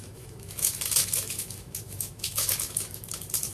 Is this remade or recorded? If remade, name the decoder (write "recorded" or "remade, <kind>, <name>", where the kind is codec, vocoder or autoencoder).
remade, autoencoder, DAC-VAE